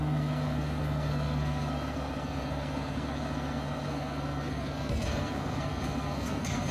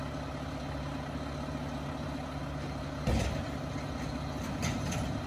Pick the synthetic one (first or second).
first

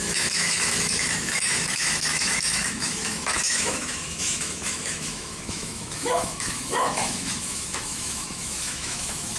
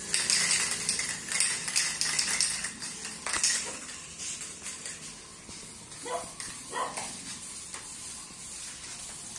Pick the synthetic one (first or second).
first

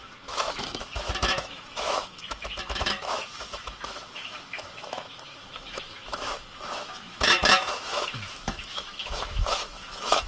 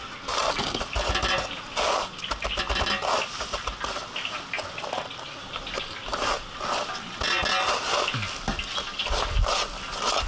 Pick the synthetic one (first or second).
first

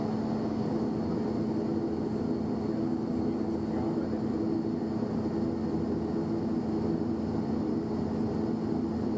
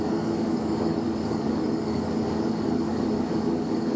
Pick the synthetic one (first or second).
second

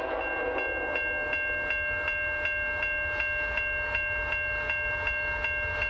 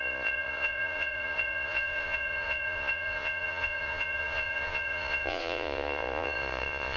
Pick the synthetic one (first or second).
second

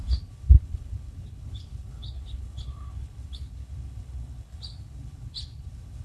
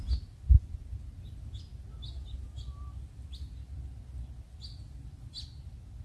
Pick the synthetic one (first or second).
first